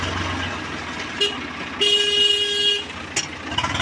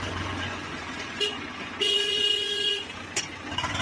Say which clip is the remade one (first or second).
second